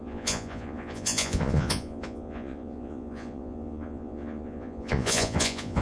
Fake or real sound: fake